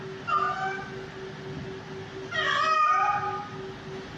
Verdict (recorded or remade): recorded